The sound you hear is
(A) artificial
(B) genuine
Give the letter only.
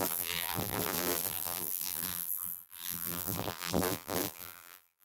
A